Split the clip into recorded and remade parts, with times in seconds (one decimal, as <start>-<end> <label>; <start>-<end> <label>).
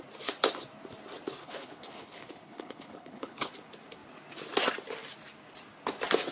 0.0-1.4 recorded; 1.4-3.5 remade; 3.5-6.3 recorded